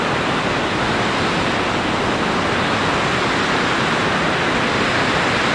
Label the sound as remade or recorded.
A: recorded